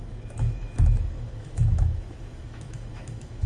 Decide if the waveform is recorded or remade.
remade